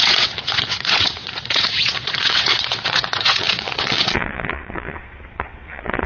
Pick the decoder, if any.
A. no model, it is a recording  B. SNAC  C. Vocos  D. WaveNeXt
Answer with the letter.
D